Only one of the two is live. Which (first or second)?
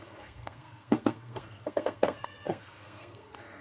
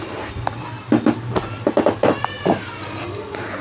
second